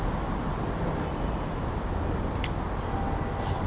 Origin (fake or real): real